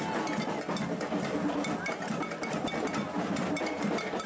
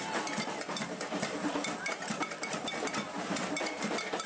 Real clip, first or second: first